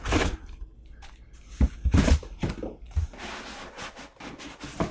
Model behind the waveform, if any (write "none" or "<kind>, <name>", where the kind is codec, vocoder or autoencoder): none